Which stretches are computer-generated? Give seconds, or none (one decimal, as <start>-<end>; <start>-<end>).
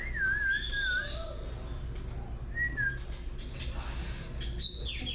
none